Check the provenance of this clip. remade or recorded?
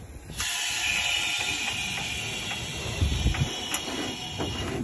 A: recorded